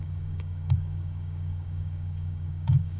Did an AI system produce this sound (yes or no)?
yes